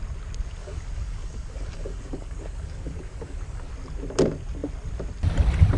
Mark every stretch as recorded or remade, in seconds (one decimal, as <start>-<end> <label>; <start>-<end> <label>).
0.0-0.6 recorded; 0.6-3.7 remade; 3.7-5.8 recorded